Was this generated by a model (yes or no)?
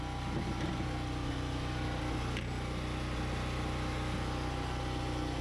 no